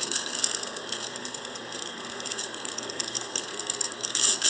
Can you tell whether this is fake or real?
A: fake